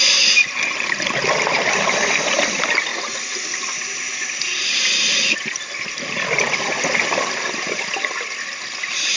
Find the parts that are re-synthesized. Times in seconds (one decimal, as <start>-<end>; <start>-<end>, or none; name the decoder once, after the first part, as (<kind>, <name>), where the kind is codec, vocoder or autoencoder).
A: none